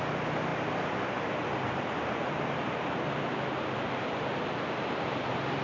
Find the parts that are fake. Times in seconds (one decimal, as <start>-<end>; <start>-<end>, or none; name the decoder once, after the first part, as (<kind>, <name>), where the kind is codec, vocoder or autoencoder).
none

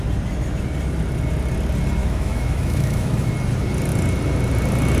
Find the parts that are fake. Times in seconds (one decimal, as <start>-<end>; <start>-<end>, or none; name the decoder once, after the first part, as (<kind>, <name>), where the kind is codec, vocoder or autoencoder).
2.0-3.3 (autoencoder, DAC-VAE)